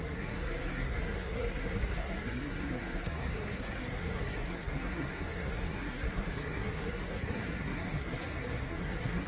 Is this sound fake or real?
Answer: fake